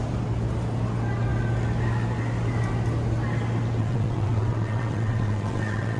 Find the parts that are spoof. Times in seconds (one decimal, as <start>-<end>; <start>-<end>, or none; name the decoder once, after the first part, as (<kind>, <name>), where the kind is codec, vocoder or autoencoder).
3.8-6.0 (vocoder, WaveNeXt)

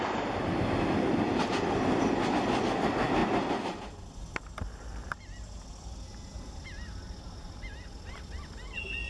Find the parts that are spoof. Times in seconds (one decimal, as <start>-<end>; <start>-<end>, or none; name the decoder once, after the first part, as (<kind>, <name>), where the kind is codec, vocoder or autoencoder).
none

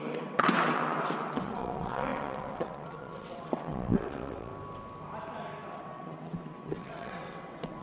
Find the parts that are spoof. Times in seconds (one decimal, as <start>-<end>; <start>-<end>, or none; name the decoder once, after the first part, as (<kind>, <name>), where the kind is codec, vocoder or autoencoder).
0.0-4.5 (vocoder, WaveNeXt); 5.8-7.8

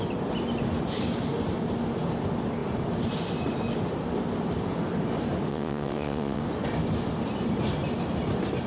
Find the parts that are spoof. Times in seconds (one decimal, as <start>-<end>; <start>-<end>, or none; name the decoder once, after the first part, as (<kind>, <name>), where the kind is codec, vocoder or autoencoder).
5.5-6.4 (vocoder, WaveNeXt)

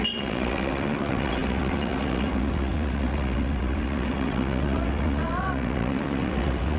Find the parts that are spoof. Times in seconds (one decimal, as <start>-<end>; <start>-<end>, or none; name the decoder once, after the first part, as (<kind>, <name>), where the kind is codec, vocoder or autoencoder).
0.0-6.8 (vocoder, WaveNeXt)

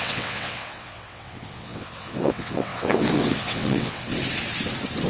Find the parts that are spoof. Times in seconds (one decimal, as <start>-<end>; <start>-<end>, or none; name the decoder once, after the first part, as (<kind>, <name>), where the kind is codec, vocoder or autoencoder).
0.0-4.1 (vocoder, WaveNeXt)

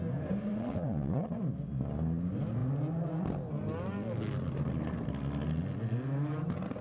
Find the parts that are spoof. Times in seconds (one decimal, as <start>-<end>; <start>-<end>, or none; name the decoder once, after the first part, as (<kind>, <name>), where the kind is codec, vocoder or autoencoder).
0.5-1.4 (vocoder, WaveNeXt)

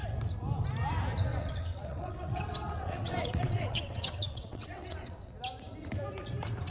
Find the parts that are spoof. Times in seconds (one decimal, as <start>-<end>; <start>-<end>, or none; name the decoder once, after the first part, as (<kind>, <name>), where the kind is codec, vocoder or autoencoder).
1.3-5.3 (vocoder, WaveNeXt)